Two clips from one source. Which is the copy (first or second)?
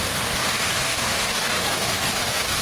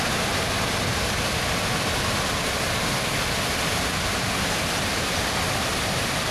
first